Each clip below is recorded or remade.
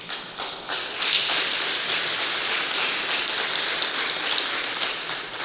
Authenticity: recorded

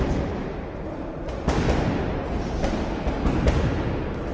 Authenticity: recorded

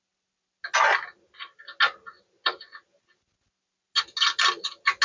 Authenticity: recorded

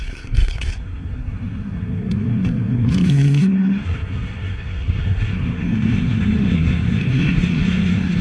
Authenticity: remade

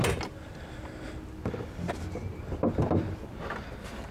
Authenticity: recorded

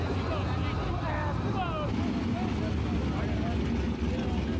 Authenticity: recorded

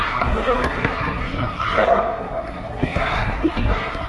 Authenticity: remade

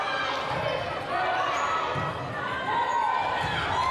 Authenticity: recorded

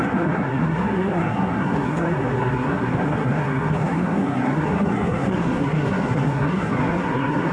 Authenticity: remade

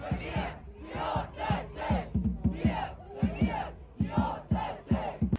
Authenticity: recorded